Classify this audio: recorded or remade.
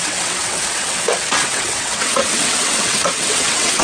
remade